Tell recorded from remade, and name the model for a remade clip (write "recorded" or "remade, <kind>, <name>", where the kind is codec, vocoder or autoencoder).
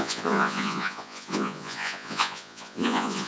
remade, vocoder, Vocos